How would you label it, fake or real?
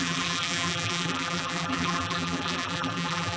fake